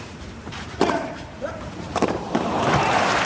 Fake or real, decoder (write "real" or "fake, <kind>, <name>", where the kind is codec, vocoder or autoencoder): fake, vocoder, BigVGAN v2